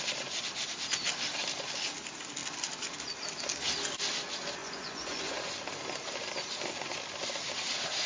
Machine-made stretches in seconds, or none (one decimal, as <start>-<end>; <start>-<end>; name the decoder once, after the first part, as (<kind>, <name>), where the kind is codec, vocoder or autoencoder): 4.6-5.5 (vocoder, Vocos)